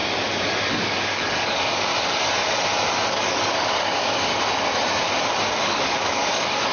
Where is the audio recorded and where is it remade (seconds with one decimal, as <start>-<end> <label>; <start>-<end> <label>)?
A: 0.0-0.7 recorded; 0.7-1.9 remade; 1.9-3.1 recorded; 3.1-4.3 remade; 4.3-5.5 recorded; 5.5-6.7 remade